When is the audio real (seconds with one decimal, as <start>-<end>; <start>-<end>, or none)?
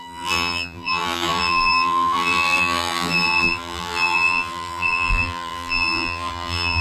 none